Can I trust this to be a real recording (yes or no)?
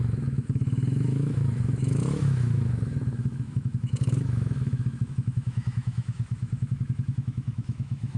no